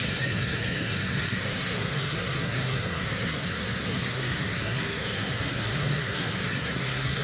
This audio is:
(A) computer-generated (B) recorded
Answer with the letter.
A